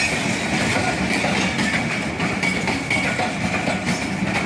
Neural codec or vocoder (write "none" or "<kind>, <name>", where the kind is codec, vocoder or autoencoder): none